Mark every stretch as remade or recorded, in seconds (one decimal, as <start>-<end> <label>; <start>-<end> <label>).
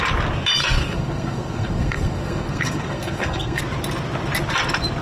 0.0-0.6 recorded; 0.6-3.6 remade; 3.6-5.0 recorded